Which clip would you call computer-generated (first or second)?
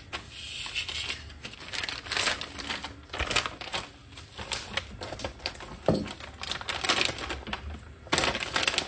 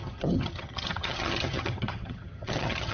second